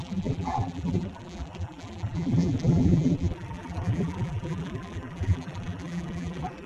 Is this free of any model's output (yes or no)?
no